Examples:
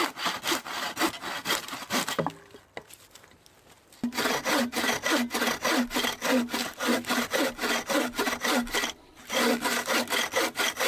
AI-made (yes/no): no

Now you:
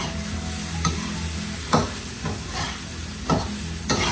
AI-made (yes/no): no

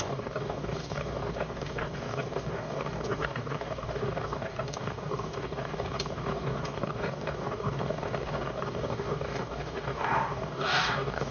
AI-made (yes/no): yes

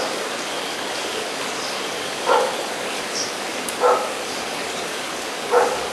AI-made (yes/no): yes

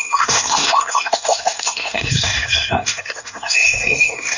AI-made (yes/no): yes